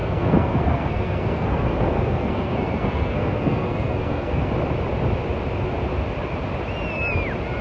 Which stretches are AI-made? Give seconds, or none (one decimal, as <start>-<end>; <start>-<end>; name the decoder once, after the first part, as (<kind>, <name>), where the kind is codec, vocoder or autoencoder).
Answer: 0.0-4.5 (codec, SNAC)